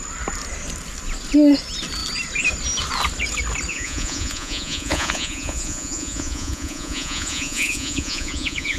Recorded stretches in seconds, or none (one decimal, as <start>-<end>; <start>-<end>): 0.0-3.7

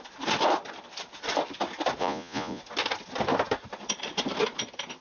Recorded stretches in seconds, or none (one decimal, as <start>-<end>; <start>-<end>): 0.0-2.0; 2.6-5.0

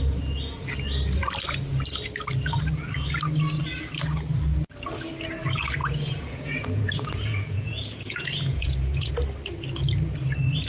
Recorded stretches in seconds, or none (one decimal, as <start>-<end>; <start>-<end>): 0.0-5.8; 9.1-10.7

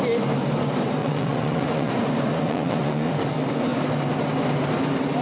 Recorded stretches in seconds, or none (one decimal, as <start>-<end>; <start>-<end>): 0.0-1.0; 1.9-2.3; 3.1-5.2

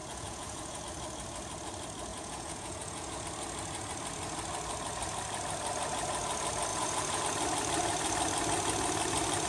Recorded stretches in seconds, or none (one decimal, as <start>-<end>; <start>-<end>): 0.8-2.1; 3.2-6.7; 7.2-9.5